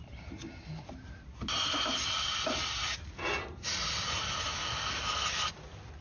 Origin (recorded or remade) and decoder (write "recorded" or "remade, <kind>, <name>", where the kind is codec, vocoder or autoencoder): recorded